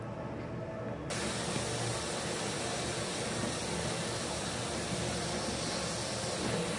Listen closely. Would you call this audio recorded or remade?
recorded